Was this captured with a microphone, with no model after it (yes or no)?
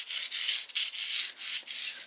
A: yes